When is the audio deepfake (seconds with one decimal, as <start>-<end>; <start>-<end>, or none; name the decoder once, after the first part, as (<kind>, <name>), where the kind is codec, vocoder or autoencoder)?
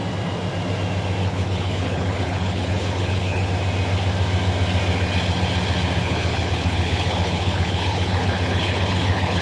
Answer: 1.2-3.5 (codec, HILCodec); 6.0-9.4